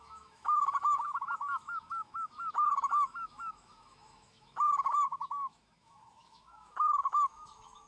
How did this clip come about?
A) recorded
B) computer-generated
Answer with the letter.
B